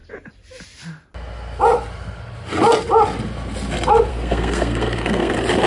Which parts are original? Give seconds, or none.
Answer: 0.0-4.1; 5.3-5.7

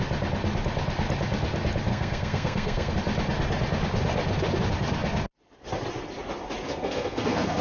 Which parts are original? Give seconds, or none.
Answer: 0.0-1.9; 2.9-6.7